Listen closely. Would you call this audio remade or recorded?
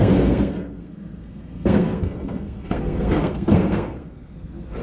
remade